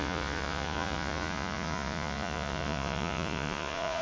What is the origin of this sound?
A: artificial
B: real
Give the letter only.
A